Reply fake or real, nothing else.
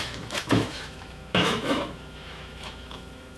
fake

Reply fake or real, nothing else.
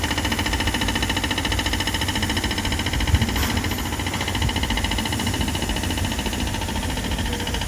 real